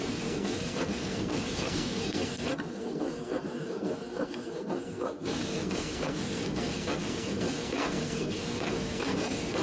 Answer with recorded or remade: remade